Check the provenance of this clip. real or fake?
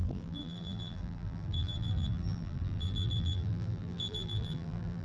fake